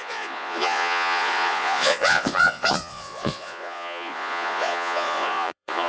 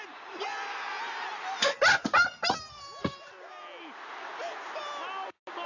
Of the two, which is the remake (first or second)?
first